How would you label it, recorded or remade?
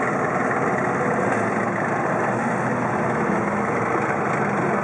recorded